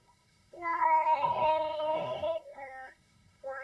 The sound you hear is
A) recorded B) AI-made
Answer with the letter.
B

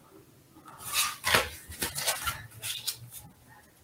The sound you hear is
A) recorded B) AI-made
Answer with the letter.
A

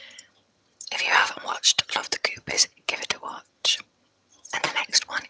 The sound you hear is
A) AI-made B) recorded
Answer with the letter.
A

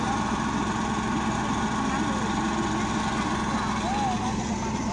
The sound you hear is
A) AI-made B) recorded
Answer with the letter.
B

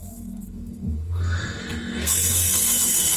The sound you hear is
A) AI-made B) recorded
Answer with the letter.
A